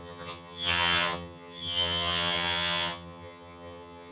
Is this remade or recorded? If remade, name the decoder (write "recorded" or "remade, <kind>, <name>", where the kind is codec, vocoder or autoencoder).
remade, vocoder, HiFi-GAN